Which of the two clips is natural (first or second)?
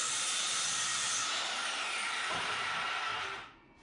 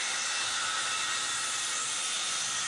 second